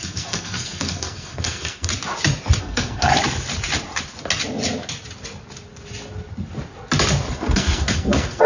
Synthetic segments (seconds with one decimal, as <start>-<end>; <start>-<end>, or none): 0.0-1.9; 2.6-3.1; 7.3-8.5

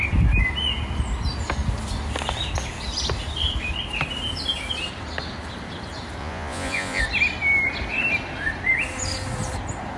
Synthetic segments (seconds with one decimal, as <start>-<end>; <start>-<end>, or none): 6.2-7.0

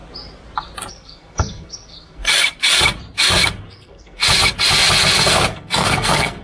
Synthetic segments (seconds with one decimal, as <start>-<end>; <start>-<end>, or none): 0.9-2.2; 3.7-4.2; 5.2-6.4

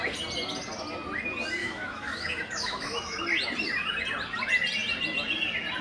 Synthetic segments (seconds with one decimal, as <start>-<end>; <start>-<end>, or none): 1.6-3.2